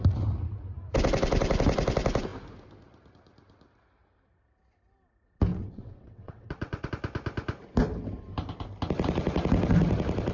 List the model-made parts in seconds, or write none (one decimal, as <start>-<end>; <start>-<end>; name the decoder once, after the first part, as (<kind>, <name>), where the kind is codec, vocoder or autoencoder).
5.5-6.9 (vocoder, WaveNeXt)